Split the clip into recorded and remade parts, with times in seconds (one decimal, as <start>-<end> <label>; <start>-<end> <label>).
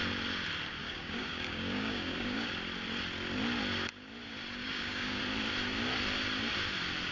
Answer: 0.0-0.8 recorded; 0.8-2.5 remade; 2.5-4.6 recorded; 4.6-5.2 remade; 5.2-7.1 recorded